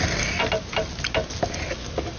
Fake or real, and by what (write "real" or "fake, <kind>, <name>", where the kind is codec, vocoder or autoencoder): real